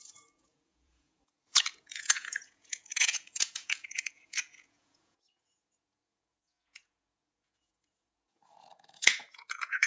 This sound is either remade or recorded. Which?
remade